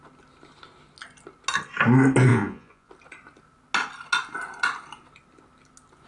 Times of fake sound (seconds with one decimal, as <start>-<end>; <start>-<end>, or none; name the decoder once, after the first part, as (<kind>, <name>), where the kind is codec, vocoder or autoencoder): 2.3-2.9 (vocoder, Vocos)